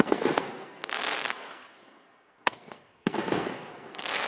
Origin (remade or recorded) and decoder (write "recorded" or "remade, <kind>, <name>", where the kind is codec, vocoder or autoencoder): remade, codec, SNAC